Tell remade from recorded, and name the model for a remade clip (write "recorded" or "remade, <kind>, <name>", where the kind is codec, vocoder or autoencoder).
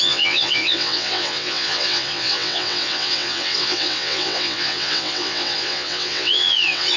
remade, vocoder, WaveNeXt